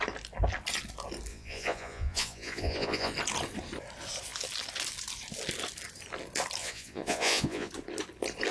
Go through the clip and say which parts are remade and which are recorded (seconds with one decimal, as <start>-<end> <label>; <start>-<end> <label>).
0.0-1.3 recorded; 1.3-3.1 remade; 3.1-6.6 recorded; 6.6-7.7 remade; 7.7-8.5 recorded